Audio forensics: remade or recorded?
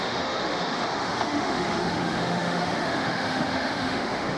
remade